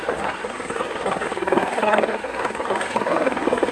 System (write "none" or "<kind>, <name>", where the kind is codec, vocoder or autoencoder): codec, SNAC